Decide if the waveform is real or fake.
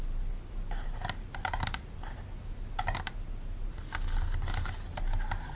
real